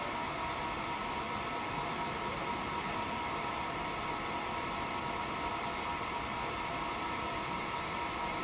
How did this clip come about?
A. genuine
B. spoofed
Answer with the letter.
A